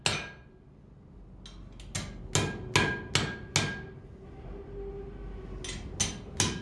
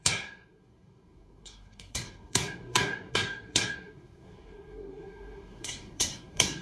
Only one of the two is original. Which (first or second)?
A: first